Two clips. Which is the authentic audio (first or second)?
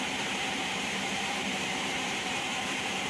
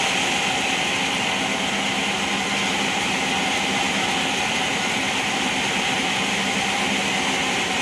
second